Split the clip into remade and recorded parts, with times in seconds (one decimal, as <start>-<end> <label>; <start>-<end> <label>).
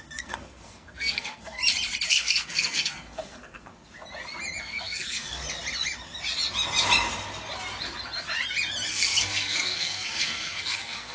0.0-1.6 remade; 1.6-2.1 recorded; 2.1-3.7 remade; 3.7-4.6 recorded; 4.6-5.4 remade; 5.4-8.9 recorded; 8.9-11.1 remade